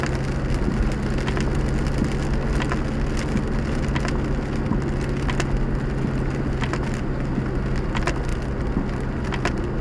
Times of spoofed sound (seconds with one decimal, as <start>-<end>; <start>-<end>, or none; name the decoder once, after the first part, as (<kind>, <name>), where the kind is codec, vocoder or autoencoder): none